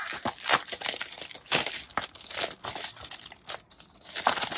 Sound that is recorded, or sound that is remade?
recorded